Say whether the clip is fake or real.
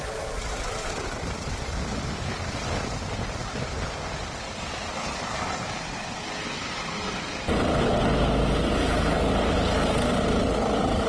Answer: real